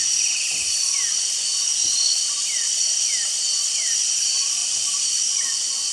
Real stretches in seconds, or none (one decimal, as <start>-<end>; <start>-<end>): 0.0-1.7; 2.8-4.6; 5.2-5.9